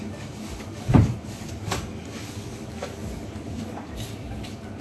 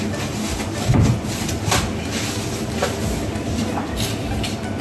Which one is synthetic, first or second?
first